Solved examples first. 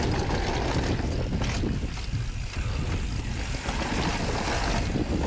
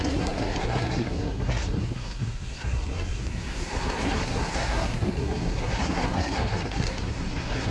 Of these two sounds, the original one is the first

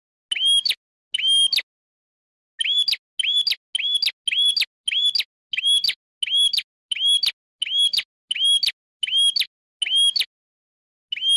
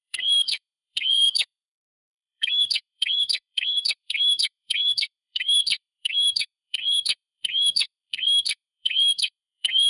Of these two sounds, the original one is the first